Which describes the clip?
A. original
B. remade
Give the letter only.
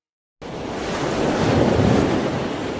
A